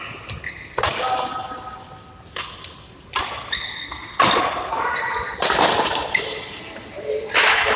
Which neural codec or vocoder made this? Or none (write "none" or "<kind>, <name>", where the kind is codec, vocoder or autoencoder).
none